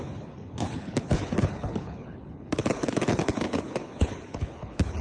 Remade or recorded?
remade